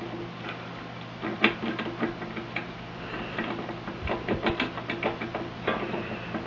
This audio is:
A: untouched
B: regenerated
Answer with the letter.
A